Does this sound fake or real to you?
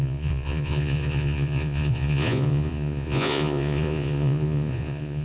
fake